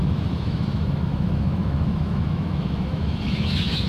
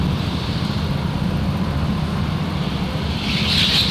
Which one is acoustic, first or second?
second